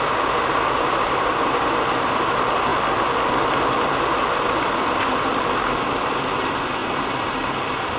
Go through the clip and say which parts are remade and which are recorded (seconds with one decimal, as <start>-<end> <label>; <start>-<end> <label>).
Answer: 0.0-6.8 remade; 6.8-7.5 recorded; 7.5-8.0 remade

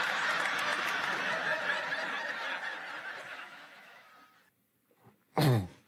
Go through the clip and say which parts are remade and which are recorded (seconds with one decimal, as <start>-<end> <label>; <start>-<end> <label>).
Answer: 0.0-3.3 recorded; 3.3-4.1 remade; 4.1-5.9 recorded

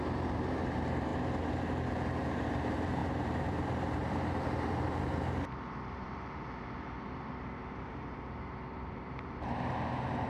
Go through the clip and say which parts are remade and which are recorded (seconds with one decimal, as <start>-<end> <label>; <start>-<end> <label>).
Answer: 0.0-1.1 remade; 1.1-2.2 recorded; 2.2-10.3 remade

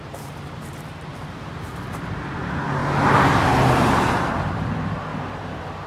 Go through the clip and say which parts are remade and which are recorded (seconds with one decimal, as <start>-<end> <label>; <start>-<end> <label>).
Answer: 0.0-2.8 remade; 2.8-4.3 recorded; 4.3-5.1 remade; 5.1-5.9 recorded

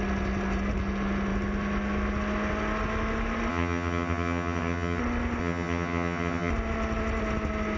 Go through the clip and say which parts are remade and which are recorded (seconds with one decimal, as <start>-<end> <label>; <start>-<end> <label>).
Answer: 0.0-3.5 recorded; 3.5-5.0 remade; 5.0-5.4 recorded; 5.4-6.5 remade; 6.5-7.8 recorded

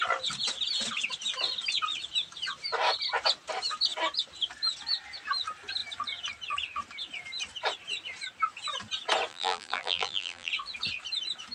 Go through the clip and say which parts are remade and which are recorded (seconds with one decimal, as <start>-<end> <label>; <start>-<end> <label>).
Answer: 0.0-9.3 recorded; 9.3-10.5 remade; 10.5-11.5 recorded

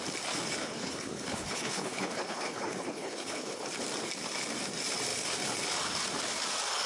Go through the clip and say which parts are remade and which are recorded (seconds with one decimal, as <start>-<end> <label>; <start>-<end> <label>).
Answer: 0.0-0.6 recorded; 0.6-3.7 remade; 3.7-6.9 recorded

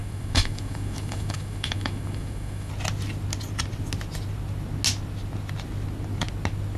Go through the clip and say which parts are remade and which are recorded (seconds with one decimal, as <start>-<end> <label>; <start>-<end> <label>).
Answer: 0.0-2.7 remade; 2.7-6.8 recorded